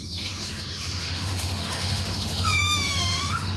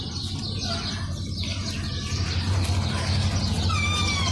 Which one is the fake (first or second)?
first